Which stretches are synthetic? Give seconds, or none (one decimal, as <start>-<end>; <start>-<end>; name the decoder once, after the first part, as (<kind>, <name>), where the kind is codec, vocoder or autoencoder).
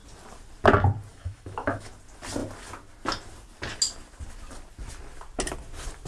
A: 1.1-1.9 (autoencoder, DAC-VAE)